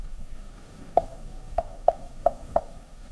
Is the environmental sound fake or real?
fake